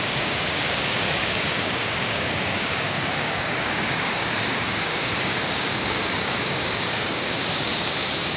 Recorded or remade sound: remade